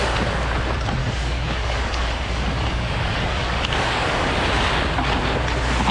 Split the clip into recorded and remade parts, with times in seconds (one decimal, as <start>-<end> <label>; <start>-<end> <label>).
0.0-1.0 recorded; 1.0-4.3 remade; 4.3-5.9 recorded